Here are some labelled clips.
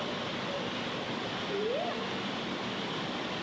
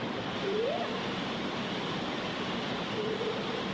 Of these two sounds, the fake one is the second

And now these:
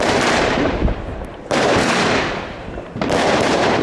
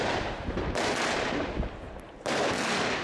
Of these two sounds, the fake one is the first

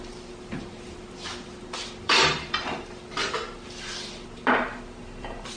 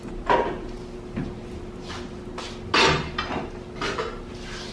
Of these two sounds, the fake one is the first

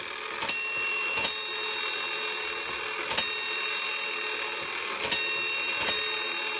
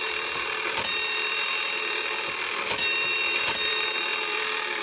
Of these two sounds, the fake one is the second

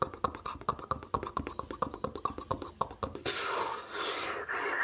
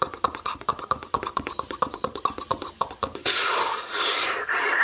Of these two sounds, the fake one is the second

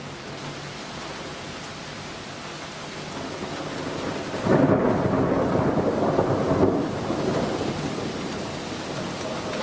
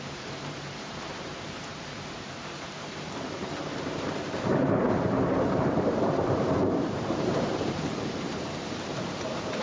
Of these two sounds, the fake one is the second